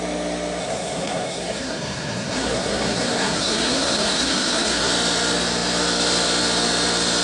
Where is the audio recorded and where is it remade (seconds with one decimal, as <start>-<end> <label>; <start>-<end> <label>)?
0.0-0.6 recorded; 0.6-4.9 remade; 4.9-7.2 recorded